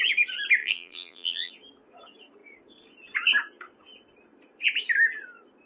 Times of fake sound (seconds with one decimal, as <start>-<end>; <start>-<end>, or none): 0.6-1.5

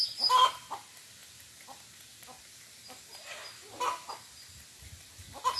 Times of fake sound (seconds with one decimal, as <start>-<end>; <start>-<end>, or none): none

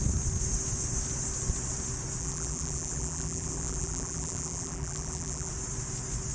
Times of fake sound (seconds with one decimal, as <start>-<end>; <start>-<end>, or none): 2.2-5.5